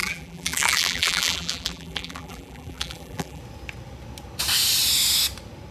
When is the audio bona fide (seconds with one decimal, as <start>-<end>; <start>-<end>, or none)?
3.4-5.7